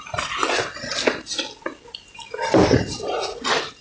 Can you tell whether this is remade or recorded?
remade